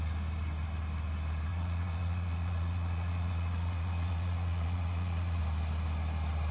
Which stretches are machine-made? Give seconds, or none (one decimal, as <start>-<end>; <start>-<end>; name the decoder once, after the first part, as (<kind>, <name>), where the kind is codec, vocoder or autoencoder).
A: 1.5-5.4 (vocoder, Vocos)